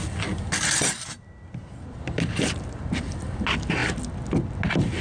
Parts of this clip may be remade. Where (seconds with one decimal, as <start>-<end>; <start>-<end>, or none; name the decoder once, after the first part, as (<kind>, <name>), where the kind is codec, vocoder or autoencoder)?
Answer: none